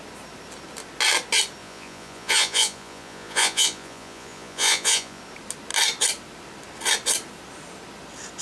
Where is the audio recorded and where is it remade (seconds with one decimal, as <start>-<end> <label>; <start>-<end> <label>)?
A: 0.0-1.6 recorded; 1.6-5.2 remade; 5.2-8.4 recorded